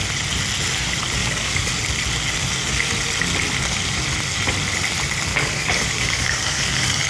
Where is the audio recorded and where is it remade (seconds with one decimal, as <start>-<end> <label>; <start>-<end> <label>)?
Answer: 0.0-1.2 recorded; 1.2-1.7 remade; 1.7-5.3 recorded; 5.3-7.1 remade